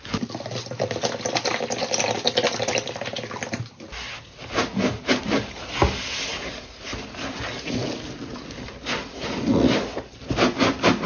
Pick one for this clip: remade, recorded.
recorded